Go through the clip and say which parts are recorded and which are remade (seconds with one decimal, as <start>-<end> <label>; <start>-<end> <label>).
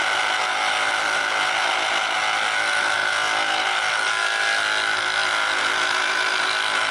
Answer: 0.0-6.9 recorded